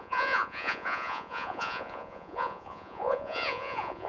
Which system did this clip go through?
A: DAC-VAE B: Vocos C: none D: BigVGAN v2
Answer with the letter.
B